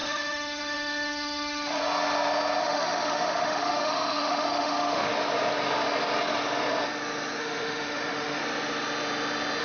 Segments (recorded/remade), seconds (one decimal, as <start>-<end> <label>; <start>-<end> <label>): 0.0-1.8 remade; 1.8-2.6 recorded; 2.6-5.1 remade; 5.1-7.4 recorded; 7.4-8.4 remade; 8.4-9.6 recorded

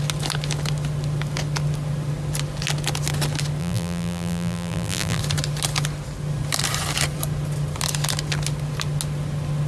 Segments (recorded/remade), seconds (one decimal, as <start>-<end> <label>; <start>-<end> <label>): 0.0-3.6 recorded; 3.6-5.2 remade; 5.2-9.7 recorded

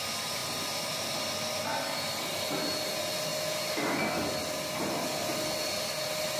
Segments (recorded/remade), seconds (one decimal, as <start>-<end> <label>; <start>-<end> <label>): 0.0-6.4 recorded

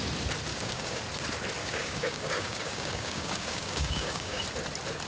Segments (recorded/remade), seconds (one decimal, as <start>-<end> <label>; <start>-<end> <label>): 0.0-0.5 recorded; 0.5-1.0 remade; 1.0-1.6 recorded; 1.6-4.4 remade; 4.4-5.1 recorded

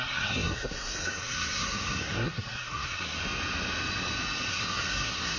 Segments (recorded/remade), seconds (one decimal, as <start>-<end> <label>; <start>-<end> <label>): 0.0-3.2 remade; 3.2-4.5 recorded; 4.5-5.4 remade

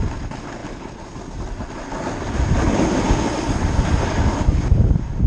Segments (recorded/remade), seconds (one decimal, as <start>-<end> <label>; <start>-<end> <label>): 0.0-5.3 recorded